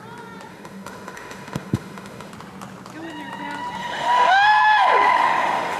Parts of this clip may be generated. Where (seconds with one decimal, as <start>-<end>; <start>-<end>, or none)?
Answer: 0.5-2.3; 3.8-5.8